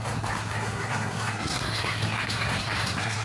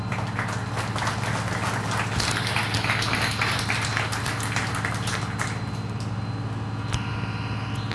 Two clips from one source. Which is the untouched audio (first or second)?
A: second